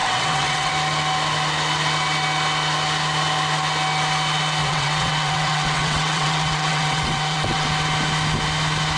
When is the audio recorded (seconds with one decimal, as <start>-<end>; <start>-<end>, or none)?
0.7-4.6; 7.7-9.0